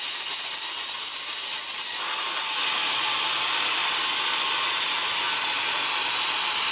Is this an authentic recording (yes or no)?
yes